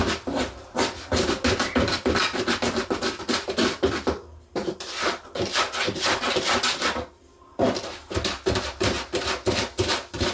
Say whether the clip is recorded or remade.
recorded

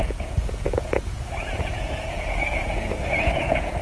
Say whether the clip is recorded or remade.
remade